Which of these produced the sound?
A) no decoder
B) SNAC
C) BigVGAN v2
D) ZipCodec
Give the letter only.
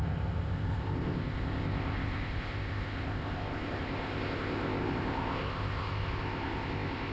D